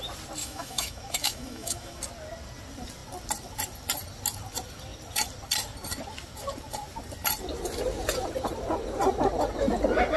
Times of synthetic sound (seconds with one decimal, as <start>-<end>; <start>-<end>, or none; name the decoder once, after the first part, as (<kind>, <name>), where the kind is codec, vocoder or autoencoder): 0.4-2.0 (autoencoder, DAC-VAE)